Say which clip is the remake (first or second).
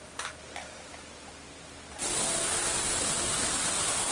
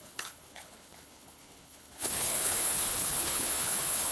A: second